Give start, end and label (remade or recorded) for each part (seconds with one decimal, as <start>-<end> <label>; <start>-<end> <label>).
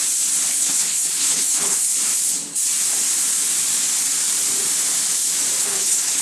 0.0-0.5 recorded; 0.5-1.9 remade; 1.9-5.6 recorded; 5.6-6.2 remade